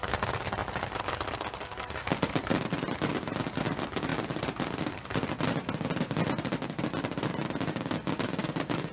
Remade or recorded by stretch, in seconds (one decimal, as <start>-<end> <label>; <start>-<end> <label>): 0.0-8.9 recorded